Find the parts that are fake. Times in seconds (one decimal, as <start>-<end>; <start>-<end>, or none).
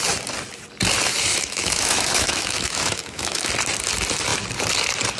1.3-3.5